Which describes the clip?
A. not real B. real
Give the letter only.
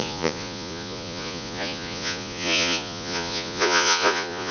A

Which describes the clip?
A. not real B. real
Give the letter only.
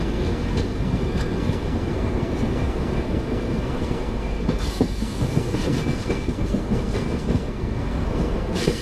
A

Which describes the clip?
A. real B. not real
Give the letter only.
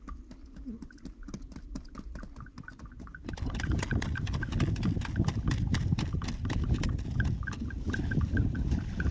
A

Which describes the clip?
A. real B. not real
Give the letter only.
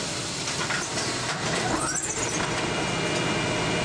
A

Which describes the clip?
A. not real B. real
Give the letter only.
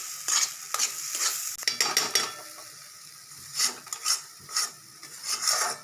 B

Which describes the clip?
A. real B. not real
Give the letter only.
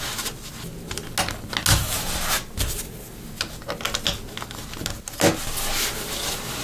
A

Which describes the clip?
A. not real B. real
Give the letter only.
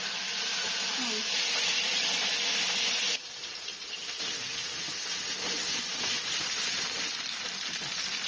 B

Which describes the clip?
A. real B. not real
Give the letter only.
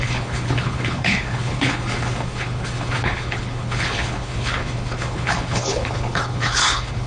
B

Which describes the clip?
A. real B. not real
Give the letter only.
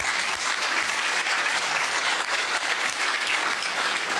B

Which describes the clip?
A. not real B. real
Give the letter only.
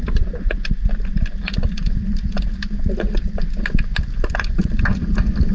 B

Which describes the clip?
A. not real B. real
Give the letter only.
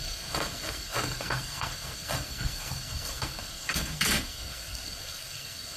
A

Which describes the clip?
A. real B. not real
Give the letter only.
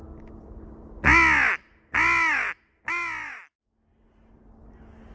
A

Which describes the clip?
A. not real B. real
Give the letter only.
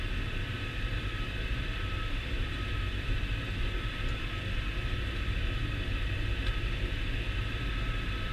A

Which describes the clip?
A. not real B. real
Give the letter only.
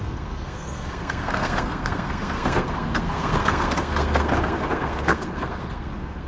A